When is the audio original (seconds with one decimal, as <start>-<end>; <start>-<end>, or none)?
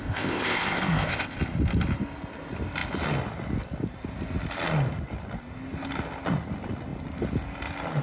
1.4-8.0